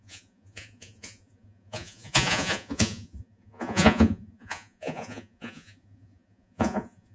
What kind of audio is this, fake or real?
fake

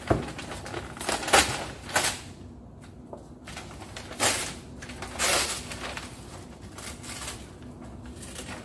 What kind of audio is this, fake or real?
real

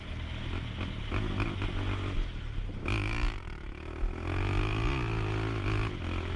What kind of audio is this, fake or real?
real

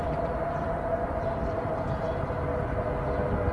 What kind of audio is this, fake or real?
real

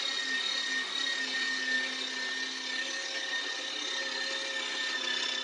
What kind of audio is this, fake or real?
real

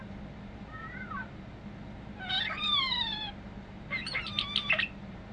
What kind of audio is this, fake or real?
real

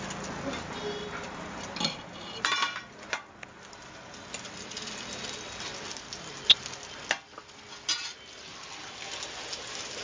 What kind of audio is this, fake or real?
real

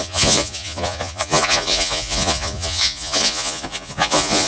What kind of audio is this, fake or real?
fake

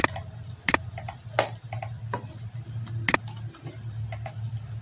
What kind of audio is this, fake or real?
real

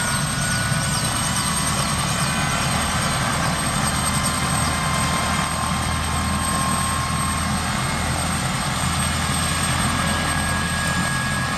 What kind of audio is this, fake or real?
real